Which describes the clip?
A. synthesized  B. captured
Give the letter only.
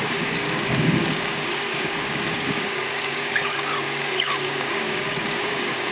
A